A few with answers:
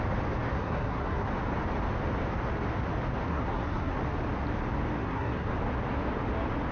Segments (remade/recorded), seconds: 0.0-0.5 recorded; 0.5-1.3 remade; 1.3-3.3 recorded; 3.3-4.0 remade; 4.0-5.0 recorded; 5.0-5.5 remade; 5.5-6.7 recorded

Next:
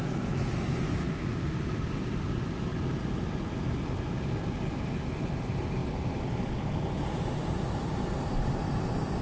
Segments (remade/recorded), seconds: 0.0-1.3 remade; 1.3-9.2 recorded

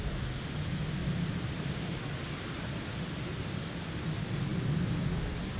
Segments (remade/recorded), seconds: 0.0-5.6 recorded

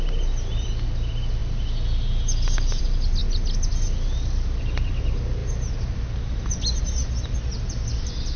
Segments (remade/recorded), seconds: 0.0-8.4 recorded

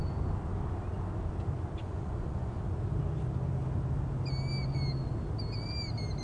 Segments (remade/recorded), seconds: 0.0-1.8 recorded; 1.8-2.6 remade; 2.6-6.2 recorded

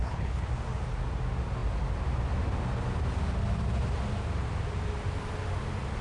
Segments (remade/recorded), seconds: 0.0-0.5 remade; 0.5-6.0 recorded

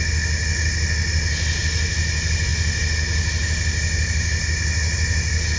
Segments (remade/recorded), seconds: 0.0-5.6 recorded

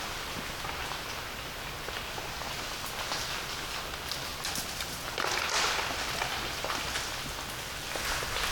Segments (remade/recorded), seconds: 0.0-8.5 recorded